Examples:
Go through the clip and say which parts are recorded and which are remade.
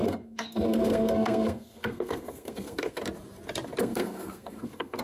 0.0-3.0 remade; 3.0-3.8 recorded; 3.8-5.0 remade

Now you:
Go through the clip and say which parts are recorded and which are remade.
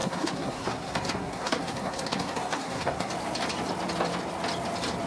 0.0-3.1 remade; 3.1-5.1 recorded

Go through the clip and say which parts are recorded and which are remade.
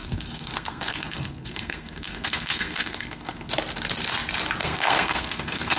0.0-3.5 remade; 3.5-4.6 recorded; 4.6-5.8 remade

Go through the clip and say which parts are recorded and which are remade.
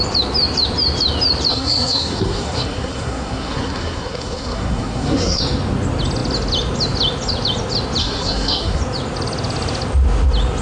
0.0-1.5 recorded; 1.5-5.4 remade; 5.4-8.0 recorded; 8.0-8.8 remade; 8.8-10.6 recorded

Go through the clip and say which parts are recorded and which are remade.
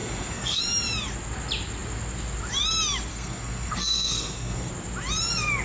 0.0-0.6 remade; 0.6-3.1 recorded; 3.1-4.7 remade; 4.7-5.6 recorded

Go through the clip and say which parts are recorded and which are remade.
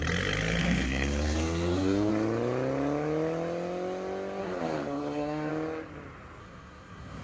0.0-0.6 recorded; 0.6-2.1 remade; 2.1-4.4 recorded; 4.4-5.5 remade; 5.5-6.4 recorded; 6.4-7.2 remade